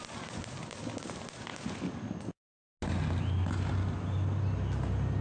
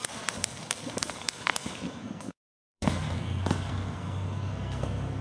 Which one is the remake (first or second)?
second